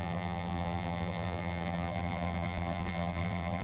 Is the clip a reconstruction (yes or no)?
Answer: yes